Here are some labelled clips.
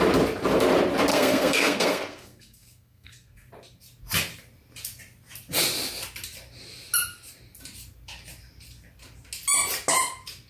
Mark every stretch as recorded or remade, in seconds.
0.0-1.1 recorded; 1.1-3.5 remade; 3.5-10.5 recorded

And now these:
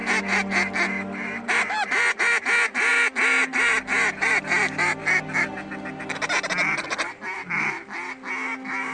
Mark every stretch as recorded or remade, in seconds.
0.0-8.9 recorded

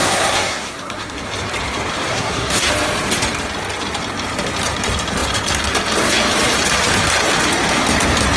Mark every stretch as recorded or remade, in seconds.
0.0-1.3 remade; 1.3-2.1 recorded; 2.1-2.7 remade; 2.7-8.4 recorded

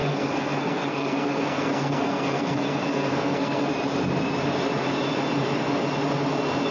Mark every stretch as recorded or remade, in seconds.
0.0-3.7 remade; 3.7-6.7 recorded

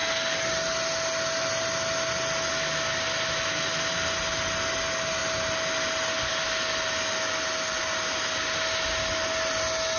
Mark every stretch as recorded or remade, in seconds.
0.0-10.0 recorded

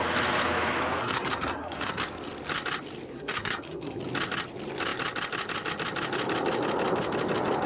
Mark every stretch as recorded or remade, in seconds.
0.0-1.0 recorded; 1.0-2.0 remade; 2.0-3.1 recorded; 3.1-4.0 remade; 4.0-7.7 recorded

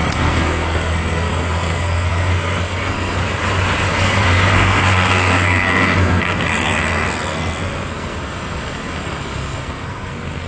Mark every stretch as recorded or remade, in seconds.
0.0-3.2 remade; 3.2-3.9 recorded; 3.9-10.5 remade

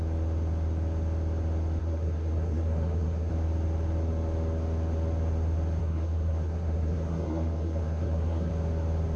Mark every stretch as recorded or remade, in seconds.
0.0-1.8 recorded; 1.8-3.3 remade; 3.3-5.8 recorded; 5.8-8.5 remade; 8.5-9.2 recorded